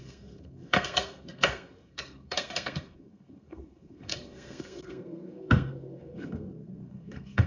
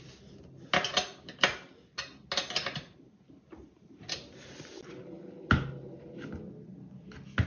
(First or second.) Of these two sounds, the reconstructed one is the first